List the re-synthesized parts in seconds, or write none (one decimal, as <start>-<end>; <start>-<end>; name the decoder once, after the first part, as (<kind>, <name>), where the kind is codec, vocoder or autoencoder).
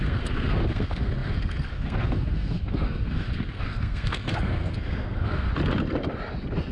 0.0-5.5 (codec, SNAC)